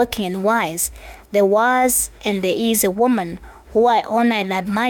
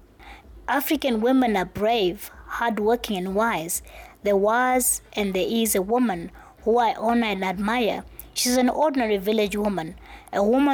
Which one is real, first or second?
second